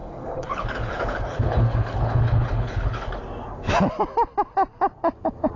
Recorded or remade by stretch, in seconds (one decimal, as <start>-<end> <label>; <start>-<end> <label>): 0.0-3.2 remade; 3.2-5.6 recorded